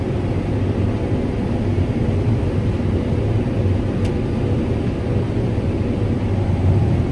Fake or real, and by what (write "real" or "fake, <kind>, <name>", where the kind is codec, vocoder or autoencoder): real